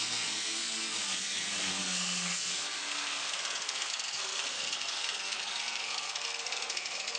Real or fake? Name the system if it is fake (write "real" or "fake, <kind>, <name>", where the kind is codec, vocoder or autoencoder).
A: fake, codec, SNAC